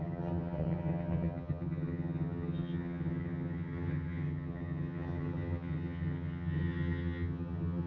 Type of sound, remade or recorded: remade